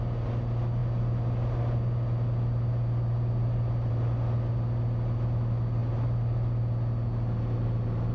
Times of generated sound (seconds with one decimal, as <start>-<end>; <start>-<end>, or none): none